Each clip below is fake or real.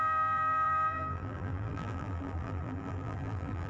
fake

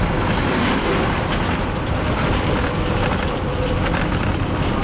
real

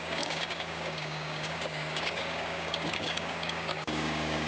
fake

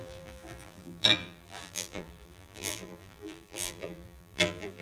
fake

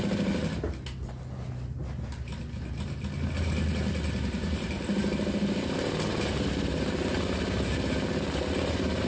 real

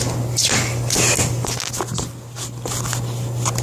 real